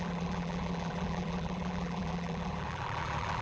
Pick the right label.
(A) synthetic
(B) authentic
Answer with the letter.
A